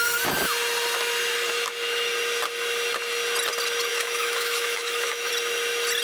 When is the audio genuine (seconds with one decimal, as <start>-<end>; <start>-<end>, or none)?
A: 0.0-3.9; 5.3-6.0